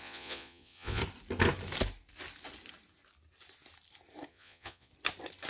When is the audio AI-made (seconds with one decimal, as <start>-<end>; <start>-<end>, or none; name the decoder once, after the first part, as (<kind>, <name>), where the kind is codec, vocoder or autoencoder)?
0.0-1.0 (vocoder, Vocos); 4.3-4.9